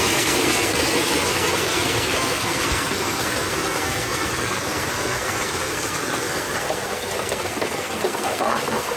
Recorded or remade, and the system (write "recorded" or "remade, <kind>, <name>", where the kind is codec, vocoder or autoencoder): remade, codec, SNAC